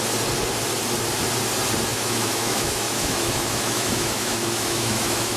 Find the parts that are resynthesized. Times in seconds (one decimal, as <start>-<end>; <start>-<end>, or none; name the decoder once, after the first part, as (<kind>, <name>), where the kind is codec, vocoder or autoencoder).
1.9-5.4 (autoencoder, DAC-VAE)